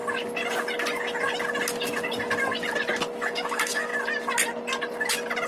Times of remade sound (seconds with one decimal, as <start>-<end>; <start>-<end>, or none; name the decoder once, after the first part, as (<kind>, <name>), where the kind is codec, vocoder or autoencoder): 3.3-3.9 (autoencoder, DAC-VAE)